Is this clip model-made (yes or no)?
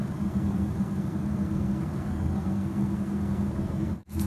yes